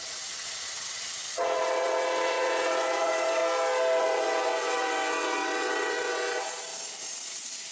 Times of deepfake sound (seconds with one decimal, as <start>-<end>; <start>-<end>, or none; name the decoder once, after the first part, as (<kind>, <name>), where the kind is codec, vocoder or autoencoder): 0.0-3.4 (vocoder, WaveNeXt); 4.0-6.7; 7.3-7.7